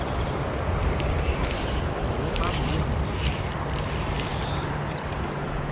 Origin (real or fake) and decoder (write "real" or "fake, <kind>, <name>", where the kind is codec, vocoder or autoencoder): real